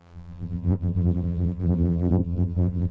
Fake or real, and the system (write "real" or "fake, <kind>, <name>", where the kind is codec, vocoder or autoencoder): fake, vocoder, BigVGAN v2